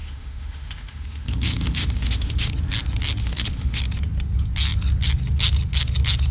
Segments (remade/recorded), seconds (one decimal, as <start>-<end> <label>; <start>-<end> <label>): 0.0-2.5 remade; 2.5-3.2 recorded; 3.2-3.8 remade; 3.8-6.3 recorded